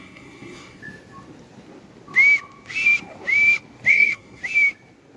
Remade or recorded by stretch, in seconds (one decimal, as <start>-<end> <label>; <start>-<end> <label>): 0.0-0.8 remade; 0.8-3.9 recorded; 3.9-4.4 remade; 4.4-5.2 recorded